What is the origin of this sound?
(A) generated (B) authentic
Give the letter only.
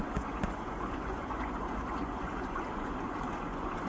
A